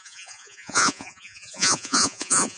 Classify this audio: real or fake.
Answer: fake